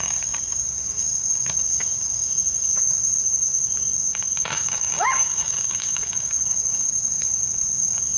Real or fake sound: fake